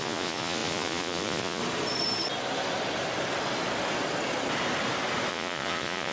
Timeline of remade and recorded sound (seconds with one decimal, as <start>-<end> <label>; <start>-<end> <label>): 0.0-1.6 remade; 1.6-5.3 recorded; 5.3-6.1 remade